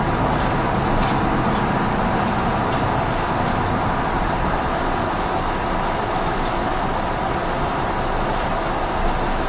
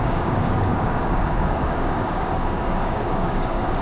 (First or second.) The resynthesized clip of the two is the second